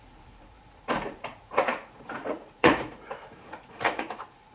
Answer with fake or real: fake